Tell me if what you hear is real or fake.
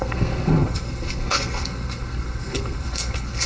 fake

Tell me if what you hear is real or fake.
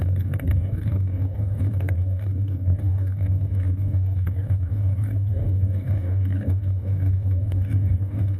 fake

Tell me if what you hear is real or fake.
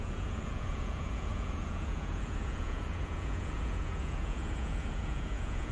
fake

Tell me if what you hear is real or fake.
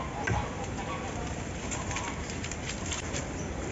real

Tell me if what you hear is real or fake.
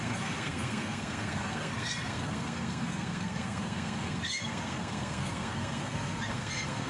fake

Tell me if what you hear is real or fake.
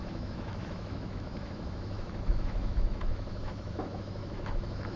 fake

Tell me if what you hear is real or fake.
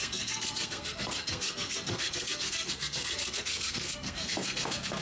fake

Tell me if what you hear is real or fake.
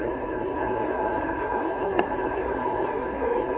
fake